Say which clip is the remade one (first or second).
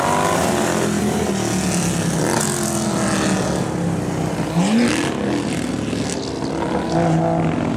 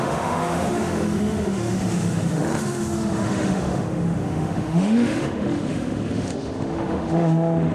second